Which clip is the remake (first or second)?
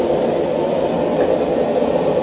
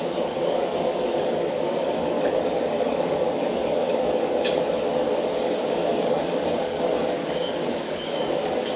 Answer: second